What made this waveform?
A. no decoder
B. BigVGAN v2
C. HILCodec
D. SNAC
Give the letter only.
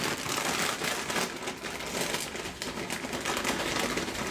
A